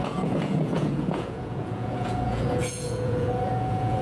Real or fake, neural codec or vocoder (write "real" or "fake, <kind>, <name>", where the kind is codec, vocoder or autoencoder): fake, vocoder, Vocos